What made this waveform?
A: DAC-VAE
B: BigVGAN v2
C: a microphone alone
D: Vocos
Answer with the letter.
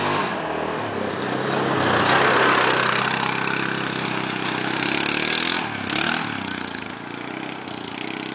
C